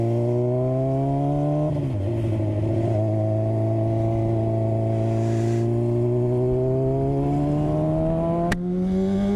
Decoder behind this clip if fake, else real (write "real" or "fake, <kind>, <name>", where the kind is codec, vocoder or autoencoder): real